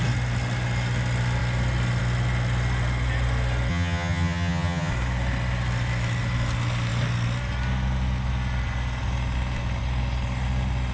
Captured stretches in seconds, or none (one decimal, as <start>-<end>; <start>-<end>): 0.0-3.7; 4.9-10.9